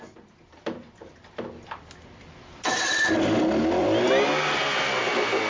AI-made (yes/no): no